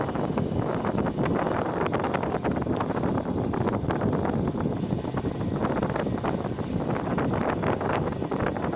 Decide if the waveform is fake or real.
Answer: real